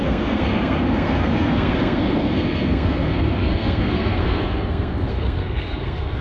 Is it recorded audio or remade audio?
remade